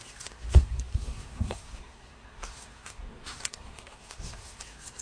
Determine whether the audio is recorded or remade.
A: remade